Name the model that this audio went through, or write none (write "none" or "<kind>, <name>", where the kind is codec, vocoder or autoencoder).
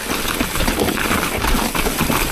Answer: none